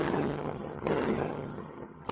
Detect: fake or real fake